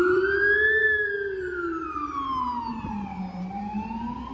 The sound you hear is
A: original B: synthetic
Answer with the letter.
B